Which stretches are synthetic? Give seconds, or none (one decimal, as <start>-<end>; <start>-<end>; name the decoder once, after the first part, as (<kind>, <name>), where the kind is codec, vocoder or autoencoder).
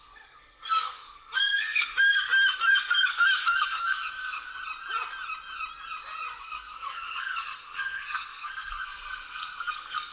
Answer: 0.0-4.5 (codec, SNAC); 6.4-10.1